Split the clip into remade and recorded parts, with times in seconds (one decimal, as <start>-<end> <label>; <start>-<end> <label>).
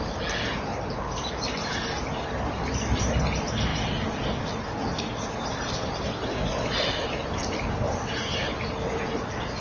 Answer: 0.0-9.6 recorded